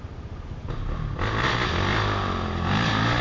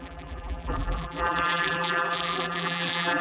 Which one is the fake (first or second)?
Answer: second